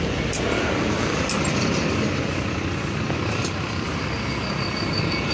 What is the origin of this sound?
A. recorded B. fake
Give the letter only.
A